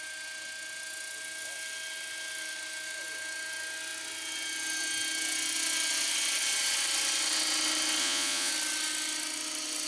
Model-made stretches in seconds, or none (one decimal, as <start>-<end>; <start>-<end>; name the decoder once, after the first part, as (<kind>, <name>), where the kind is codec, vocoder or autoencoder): 8.0-8.5 (vocoder, Vocos)